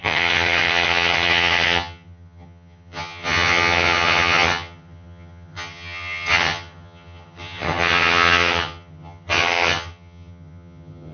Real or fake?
fake